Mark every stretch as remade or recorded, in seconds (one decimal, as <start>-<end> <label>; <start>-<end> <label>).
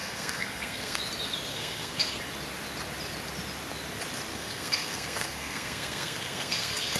0.0-1.0 remade; 1.0-1.5 recorded; 1.5-2.2 remade; 2.2-4.3 recorded; 4.3-7.0 remade